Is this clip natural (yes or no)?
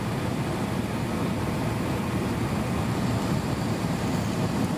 no